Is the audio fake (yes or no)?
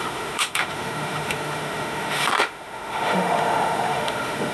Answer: yes